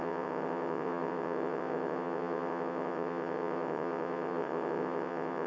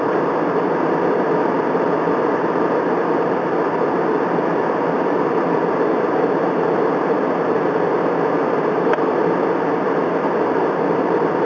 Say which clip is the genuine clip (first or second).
second